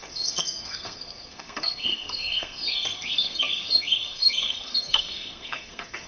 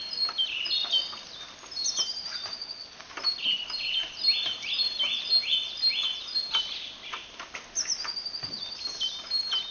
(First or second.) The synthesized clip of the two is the first